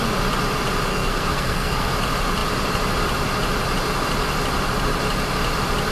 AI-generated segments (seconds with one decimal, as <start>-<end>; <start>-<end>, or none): 0.9-1.9